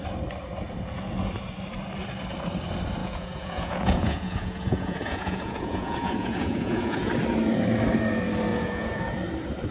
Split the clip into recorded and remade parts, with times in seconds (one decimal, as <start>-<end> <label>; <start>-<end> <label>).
0.0-3.0 recorded; 3.0-7.1 remade; 7.1-8.5 recorded; 8.5-9.0 remade; 9.0-9.7 recorded